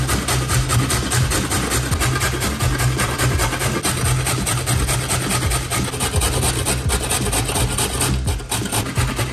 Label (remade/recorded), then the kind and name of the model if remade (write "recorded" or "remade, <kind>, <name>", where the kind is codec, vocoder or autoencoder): recorded